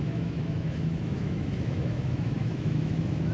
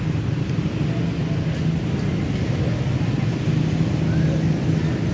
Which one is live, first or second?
second